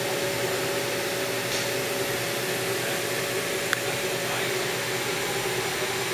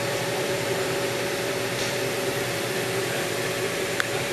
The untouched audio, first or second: first